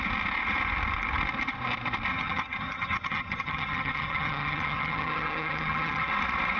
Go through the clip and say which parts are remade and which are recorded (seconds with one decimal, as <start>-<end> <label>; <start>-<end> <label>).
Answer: 0.0-2.1 recorded; 2.1-6.1 remade; 6.1-6.6 recorded